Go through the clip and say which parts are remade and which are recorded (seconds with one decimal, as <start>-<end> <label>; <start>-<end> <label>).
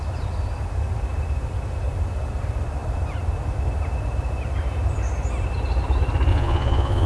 0.0-6.3 recorded; 6.3-7.1 remade